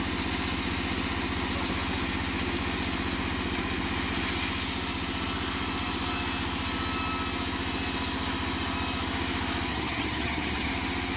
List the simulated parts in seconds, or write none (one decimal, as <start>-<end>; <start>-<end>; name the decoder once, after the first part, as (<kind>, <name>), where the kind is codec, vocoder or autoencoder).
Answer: 9.7-10.7 (vocoder, HiFi-GAN)